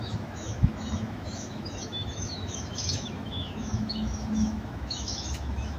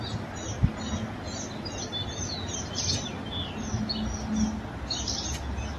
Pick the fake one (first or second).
first